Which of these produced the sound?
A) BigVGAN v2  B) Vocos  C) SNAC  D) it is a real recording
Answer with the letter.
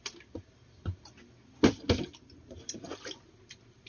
D